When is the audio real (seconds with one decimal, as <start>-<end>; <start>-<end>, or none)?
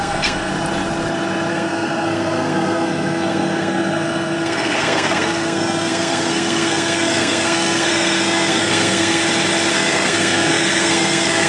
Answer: 0.5-1.5; 9.2-9.7